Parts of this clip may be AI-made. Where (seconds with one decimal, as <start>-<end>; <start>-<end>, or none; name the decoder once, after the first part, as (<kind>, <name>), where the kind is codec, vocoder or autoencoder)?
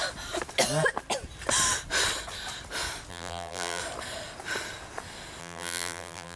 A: 3.1-3.8 (vocoder, BigVGAN v2); 5.4-6.4